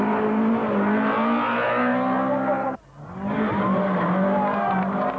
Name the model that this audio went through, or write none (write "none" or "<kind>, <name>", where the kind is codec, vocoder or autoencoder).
none